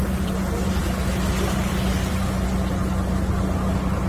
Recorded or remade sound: recorded